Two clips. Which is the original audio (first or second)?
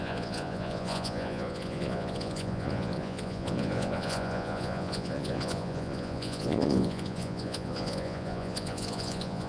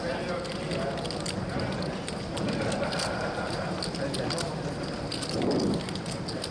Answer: second